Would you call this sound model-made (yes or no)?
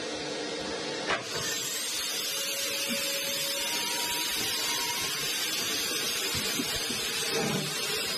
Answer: no